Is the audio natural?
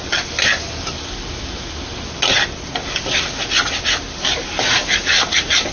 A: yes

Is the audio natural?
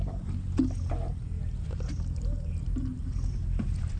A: yes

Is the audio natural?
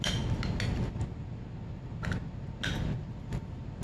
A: yes